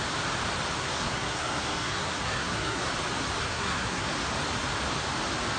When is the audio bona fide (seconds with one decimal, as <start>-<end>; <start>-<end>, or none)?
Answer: 0.0-0.8; 2.9-3.4; 4.1-5.6